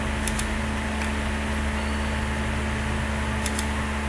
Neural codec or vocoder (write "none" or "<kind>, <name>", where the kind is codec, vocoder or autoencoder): none